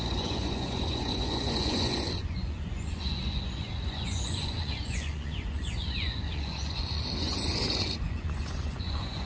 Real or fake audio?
fake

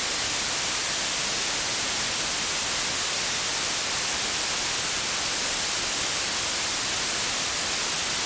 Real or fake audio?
real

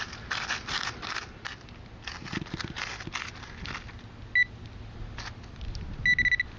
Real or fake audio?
real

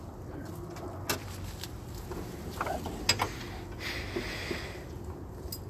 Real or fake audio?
real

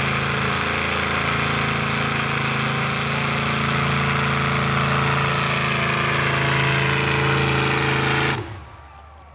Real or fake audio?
real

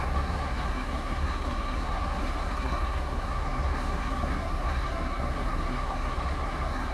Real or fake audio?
fake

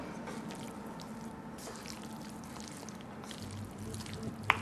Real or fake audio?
real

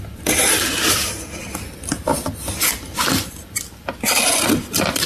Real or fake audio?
real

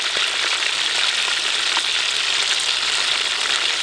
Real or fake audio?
real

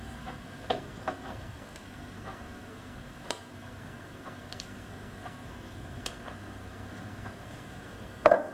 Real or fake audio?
fake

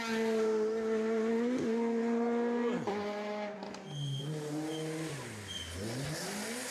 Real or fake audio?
real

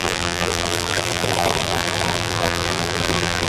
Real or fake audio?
fake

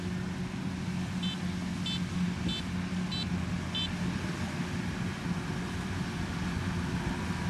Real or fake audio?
real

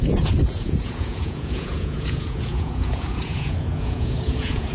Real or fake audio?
fake